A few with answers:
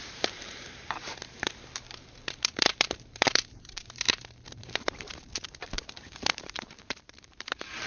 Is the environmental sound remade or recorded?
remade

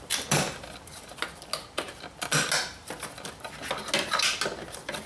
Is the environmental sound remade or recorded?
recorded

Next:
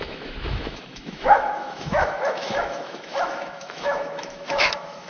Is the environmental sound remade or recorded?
remade